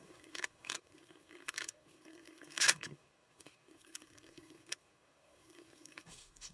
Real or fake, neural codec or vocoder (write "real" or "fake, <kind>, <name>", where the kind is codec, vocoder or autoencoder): fake, codec, SNAC